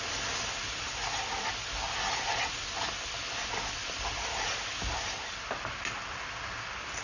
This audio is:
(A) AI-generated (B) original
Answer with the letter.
B